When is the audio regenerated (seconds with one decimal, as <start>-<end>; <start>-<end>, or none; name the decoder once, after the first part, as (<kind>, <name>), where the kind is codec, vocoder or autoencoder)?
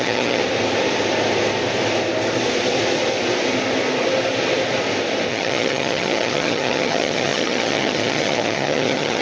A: 0.0-0.4 (vocoder, HiFi-GAN); 5.3-9.2